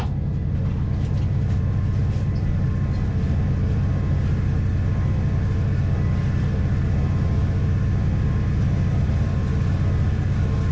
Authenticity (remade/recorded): recorded